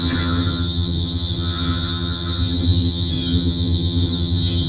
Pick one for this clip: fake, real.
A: fake